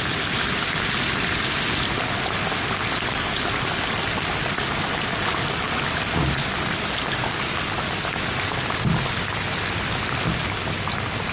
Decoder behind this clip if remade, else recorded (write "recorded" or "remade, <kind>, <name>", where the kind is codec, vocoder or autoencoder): recorded